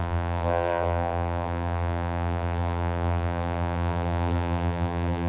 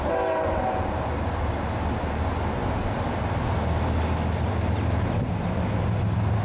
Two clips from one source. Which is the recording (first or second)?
second